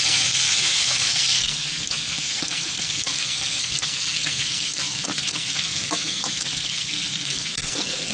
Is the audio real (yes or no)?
no